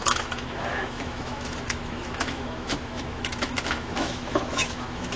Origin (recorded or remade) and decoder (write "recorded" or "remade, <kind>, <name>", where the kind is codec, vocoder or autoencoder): remade, autoencoder, DAC-VAE